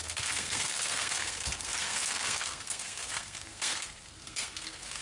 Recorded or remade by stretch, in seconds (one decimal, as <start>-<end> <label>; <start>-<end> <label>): 0.0-5.0 remade